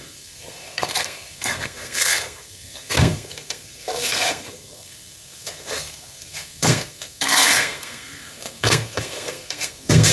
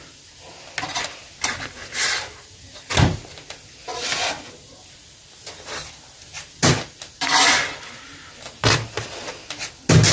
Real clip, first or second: second